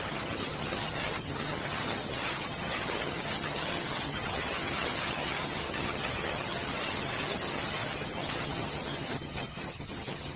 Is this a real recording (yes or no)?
no